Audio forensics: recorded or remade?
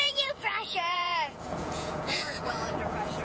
remade